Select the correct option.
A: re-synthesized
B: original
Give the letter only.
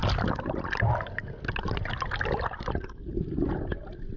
B